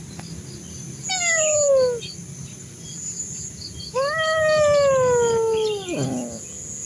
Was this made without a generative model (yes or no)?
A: yes